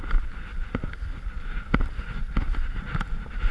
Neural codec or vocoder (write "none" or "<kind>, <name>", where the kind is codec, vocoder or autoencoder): none